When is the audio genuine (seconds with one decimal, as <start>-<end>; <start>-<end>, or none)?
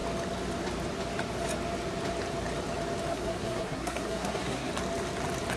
0.0-3.1; 4.7-5.6